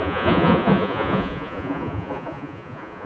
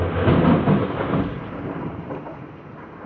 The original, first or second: second